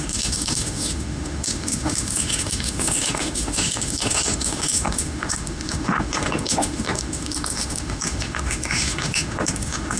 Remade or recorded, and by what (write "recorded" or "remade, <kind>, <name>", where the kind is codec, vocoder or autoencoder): remade, autoencoder, DAC-VAE